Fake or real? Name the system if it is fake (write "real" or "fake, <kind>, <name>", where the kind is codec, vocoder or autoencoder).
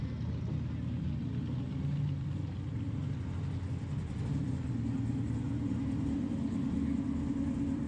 real